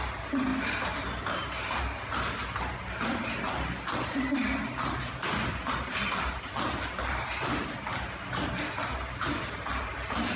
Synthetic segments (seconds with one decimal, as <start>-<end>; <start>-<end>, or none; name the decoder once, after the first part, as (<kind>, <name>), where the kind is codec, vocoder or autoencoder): none